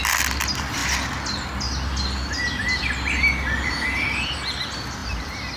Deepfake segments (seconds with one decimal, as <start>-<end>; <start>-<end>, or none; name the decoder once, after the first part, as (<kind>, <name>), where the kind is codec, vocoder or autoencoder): 5.0-5.6 (vocoder, BigVGAN v2)